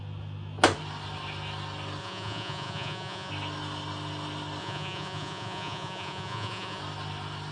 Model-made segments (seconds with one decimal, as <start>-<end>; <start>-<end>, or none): 2.0-3.3; 4.6-6.8